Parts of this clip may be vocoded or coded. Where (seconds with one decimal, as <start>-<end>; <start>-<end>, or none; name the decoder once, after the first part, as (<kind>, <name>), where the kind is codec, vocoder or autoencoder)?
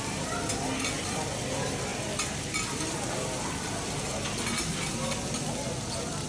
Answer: none